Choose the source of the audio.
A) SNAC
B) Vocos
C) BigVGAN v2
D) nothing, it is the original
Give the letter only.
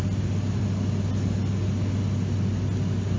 D